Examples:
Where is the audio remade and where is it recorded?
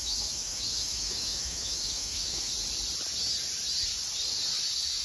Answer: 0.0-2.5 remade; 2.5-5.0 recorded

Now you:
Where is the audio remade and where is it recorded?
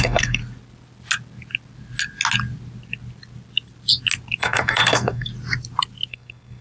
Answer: 0.0-0.4 remade; 0.4-4.4 recorded; 4.4-5.3 remade; 5.3-6.1 recorded; 6.1-6.6 remade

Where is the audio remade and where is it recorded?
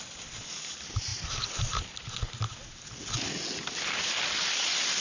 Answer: 0.0-5.0 recorded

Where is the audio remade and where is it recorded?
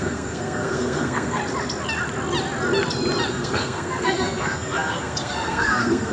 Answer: 0.0-1.4 remade; 1.4-3.3 recorded; 3.3-6.1 remade